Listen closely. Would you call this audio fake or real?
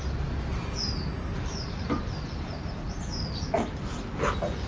real